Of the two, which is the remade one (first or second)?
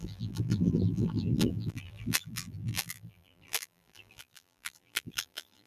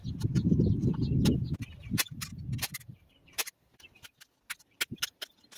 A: first